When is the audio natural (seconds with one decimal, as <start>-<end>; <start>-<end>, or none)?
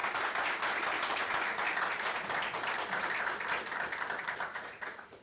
0.0-4.5